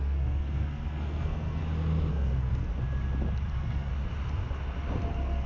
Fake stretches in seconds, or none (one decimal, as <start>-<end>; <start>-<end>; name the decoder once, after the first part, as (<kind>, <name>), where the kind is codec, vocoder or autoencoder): 0.0-1.6 (codec, SNAC); 2.1-2.7; 3.5-3.9; 5.1-5.5